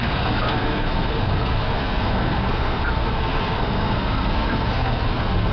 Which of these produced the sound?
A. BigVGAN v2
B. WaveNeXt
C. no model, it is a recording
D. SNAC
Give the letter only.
D